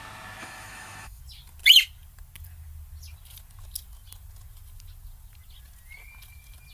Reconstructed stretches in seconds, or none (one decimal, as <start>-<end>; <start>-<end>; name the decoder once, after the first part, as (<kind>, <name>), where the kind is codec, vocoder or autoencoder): 0.4-1.2 (autoencoder, DAC-VAE)